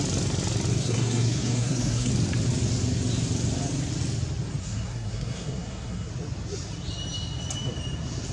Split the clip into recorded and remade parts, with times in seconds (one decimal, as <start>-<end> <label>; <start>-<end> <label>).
0.0-0.7 recorded; 0.7-2.1 remade; 2.1-4.6 recorded; 4.6-6.1 remade; 6.1-8.3 recorded